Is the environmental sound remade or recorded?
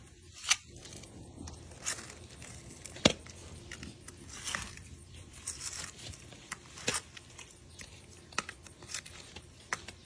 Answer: recorded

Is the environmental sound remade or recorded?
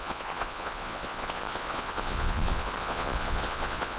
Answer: remade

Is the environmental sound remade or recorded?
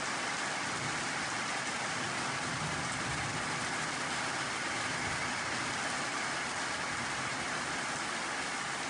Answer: recorded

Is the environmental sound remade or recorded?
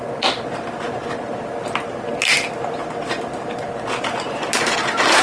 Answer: recorded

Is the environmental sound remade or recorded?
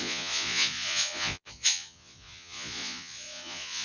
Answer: remade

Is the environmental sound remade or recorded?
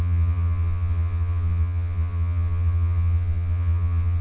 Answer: remade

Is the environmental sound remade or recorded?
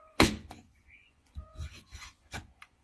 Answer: remade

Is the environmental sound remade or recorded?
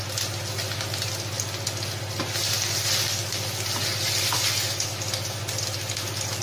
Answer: recorded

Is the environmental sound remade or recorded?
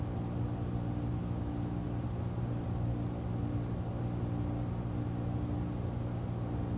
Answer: recorded